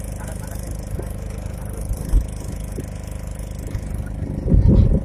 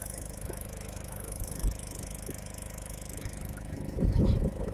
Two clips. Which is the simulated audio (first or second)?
second